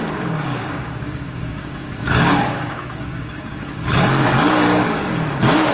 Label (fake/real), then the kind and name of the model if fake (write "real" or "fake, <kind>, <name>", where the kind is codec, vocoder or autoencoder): fake, codec, DAC